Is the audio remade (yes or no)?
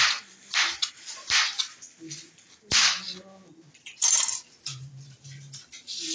no